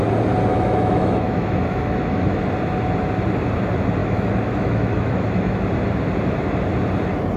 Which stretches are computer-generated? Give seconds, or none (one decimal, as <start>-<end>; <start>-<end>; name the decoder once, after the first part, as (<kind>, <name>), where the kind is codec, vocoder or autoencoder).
0.5-2.4 (autoencoder, DAC-VAE); 4.0-5.6